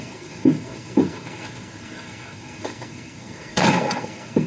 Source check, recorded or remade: remade